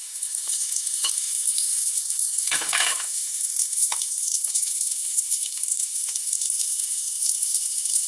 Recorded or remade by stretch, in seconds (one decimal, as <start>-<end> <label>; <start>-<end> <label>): 0.0-8.1 remade